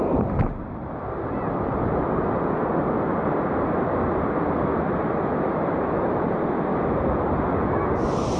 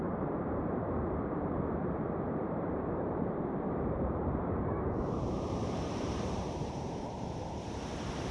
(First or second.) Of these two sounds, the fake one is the second